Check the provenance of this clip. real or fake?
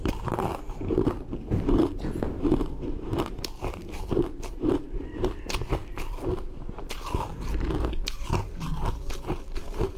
fake